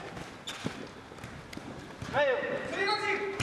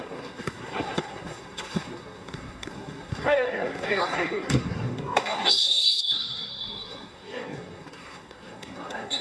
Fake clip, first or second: second